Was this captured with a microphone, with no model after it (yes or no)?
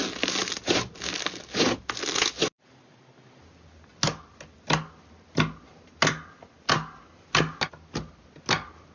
yes